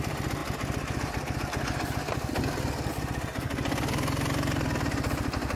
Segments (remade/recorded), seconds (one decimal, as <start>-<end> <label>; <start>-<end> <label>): 0.0-5.6 recorded